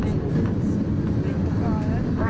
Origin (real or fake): real